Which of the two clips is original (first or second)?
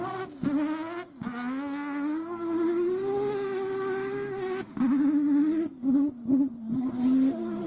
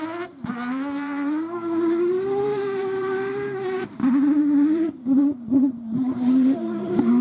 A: first